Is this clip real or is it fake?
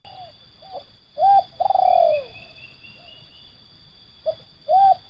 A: real